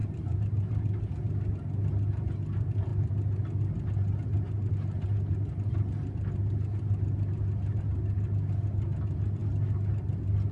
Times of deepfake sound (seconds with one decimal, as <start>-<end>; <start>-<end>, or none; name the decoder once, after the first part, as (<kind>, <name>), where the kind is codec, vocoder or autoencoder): 0.0-1.1 (vocoder, BigVGAN v2)